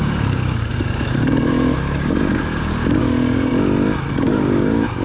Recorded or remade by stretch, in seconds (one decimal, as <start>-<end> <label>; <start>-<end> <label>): 0.0-3.5 remade; 3.5-4.1 recorded; 4.1-5.0 remade